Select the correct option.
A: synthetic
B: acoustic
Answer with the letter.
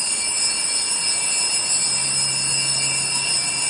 B